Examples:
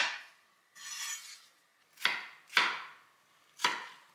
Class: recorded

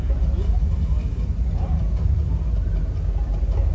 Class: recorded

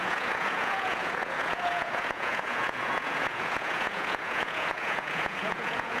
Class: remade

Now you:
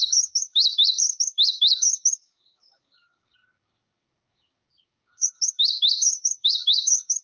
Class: remade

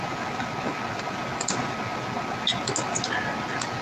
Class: recorded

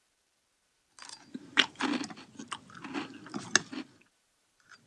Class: recorded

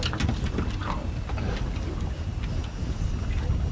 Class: recorded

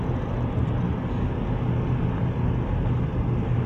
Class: recorded